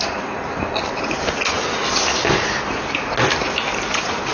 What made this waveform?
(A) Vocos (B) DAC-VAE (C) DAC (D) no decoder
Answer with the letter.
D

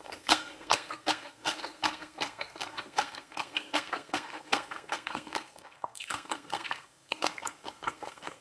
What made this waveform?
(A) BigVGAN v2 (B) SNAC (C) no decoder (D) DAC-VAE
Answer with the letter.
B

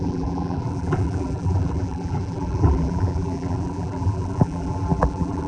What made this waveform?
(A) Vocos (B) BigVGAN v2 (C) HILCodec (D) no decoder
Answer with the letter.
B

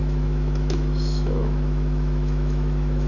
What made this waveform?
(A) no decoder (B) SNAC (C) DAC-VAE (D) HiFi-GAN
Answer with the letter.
C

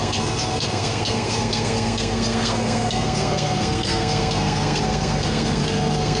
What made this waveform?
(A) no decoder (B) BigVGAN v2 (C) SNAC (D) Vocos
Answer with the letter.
C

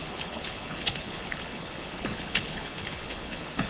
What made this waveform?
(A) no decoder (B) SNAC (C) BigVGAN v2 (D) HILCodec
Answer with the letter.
D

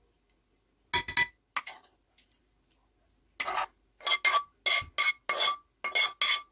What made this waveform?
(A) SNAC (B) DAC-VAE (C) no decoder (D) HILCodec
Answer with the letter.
C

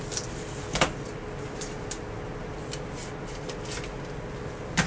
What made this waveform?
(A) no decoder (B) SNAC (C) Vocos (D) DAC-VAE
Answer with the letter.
A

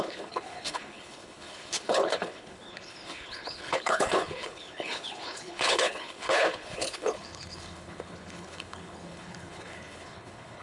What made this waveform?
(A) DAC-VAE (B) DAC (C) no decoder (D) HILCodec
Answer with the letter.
D